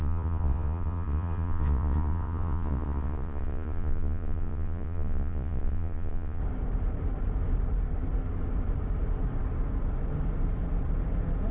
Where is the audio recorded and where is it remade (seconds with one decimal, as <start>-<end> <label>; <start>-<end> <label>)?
0.0-6.4 remade; 6.4-11.5 recorded